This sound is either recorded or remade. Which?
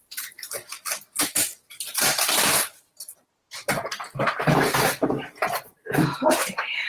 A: remade